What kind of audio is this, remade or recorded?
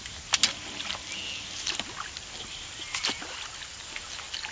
recorded